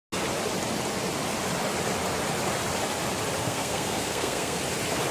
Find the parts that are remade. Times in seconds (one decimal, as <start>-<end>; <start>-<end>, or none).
3.4-4.6